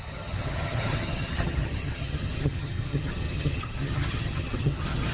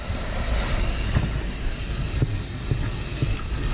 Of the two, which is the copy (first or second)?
first